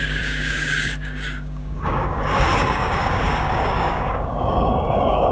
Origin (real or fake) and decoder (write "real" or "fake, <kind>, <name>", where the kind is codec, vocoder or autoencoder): fake, codec, DAC